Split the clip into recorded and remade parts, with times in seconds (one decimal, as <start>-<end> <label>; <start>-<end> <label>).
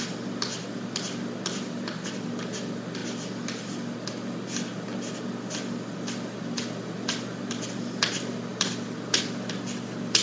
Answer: 0.0-10.2 recorded